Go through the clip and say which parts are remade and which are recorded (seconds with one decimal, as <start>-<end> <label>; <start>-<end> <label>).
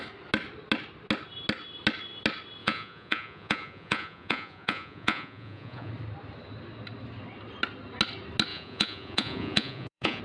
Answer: 0.0-2.6 recorded; 2.6-5.9 remade; 5.9-8.5 recorded; 8.5-10.2 remade